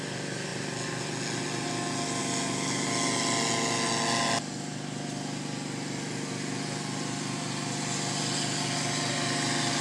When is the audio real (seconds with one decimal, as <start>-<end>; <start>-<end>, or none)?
0.0-9.8